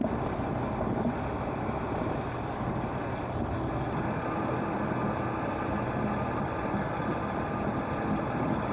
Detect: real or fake real